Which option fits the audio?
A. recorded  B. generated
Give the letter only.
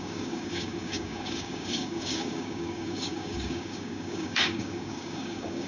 B